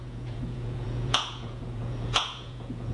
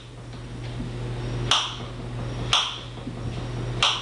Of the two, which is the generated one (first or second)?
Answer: first